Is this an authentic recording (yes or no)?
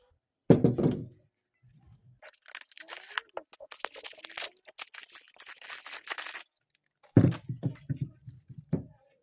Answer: yes